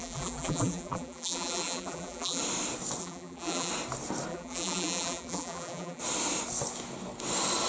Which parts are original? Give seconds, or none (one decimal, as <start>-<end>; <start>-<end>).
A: 2.4-3.0; 3.7-4.3; 6.0-7.7